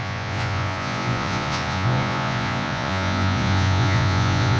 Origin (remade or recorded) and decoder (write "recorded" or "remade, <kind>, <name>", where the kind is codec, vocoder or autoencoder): remade, vocoder, Vocos